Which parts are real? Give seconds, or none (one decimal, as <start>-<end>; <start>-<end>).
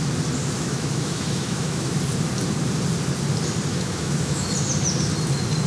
0.0-0.4; 2.0-3.7; 4.5-5.7